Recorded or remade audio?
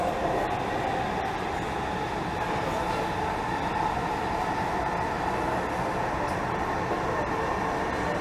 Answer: recorded